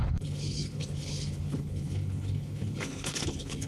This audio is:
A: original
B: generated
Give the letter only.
B